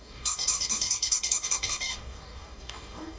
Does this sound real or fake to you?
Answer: fake